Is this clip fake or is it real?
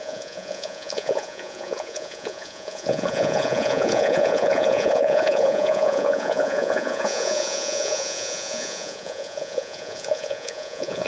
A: fake